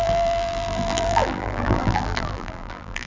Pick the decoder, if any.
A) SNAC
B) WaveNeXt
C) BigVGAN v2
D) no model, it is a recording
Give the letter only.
C